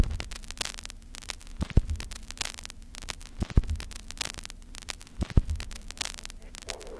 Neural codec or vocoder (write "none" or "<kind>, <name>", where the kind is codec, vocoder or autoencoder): none